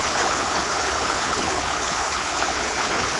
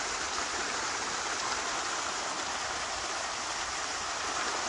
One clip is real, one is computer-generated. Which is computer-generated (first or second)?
first